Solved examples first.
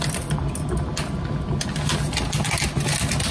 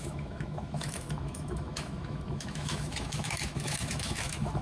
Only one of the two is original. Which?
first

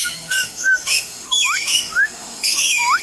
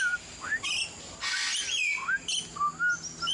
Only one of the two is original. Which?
second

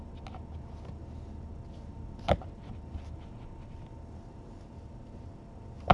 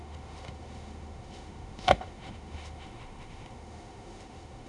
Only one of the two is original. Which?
first